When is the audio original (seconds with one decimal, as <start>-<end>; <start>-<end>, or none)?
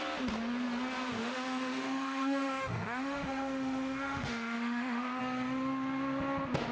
0.0-1.2; 5.2-6.7